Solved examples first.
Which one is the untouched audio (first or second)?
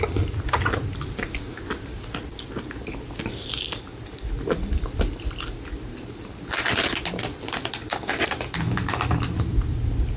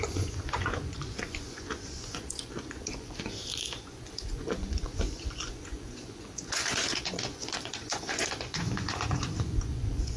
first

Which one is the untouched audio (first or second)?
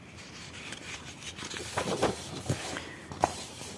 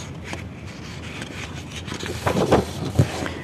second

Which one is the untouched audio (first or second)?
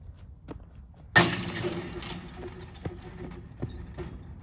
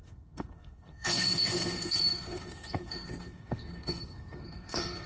first